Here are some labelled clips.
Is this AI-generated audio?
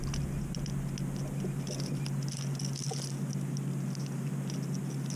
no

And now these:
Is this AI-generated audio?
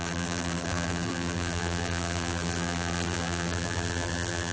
yes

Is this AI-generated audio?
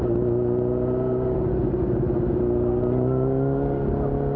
no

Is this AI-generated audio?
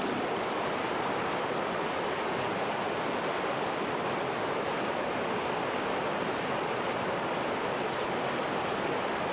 no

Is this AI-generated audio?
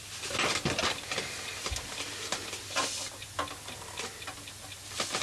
no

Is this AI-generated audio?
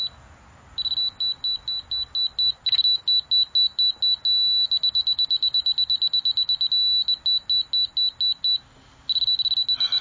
no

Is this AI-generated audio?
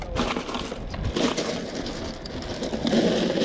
no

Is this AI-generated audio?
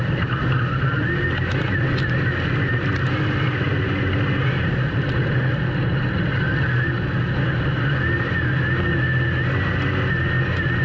no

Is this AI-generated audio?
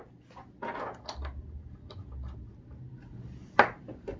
no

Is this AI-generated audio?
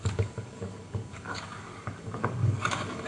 yes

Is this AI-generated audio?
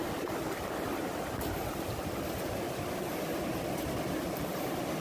no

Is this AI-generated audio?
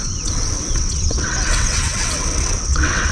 yes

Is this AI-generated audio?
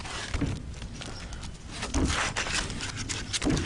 no